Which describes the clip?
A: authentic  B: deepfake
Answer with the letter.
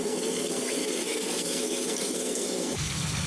B